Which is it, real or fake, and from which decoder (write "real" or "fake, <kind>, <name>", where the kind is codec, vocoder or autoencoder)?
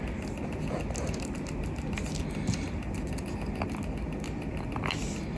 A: real